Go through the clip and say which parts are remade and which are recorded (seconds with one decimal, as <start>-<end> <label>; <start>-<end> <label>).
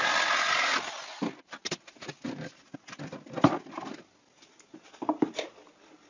0.0-6.1 recorded